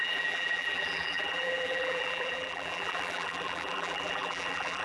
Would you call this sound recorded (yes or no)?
no